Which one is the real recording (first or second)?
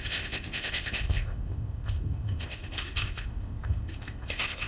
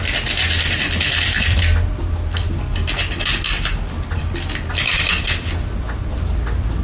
second